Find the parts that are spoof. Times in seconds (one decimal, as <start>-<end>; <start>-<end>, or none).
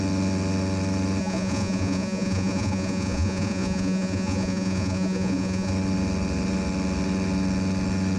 1.2-5.7